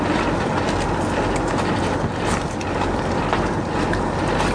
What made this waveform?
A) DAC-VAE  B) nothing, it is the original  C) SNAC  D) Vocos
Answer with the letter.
B